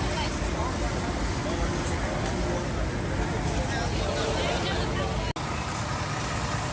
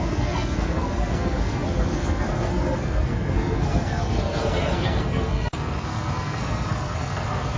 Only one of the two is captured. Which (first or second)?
first